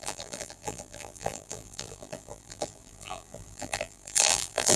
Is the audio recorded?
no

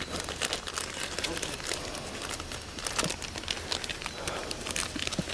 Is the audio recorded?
yes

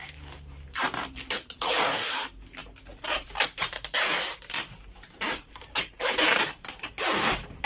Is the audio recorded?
no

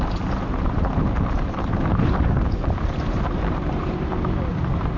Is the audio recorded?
no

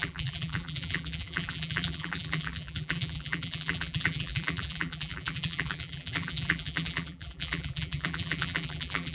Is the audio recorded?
no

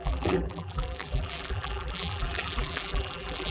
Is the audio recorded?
no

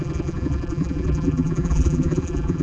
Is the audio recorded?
no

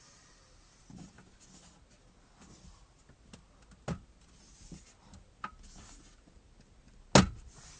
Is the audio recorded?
yes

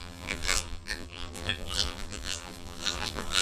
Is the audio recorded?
no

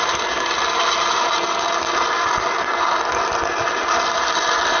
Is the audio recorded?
yes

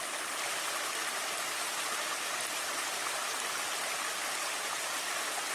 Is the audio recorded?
yes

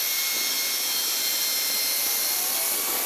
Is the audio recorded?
no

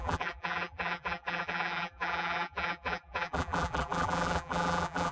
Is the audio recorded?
no